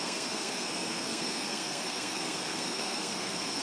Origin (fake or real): fake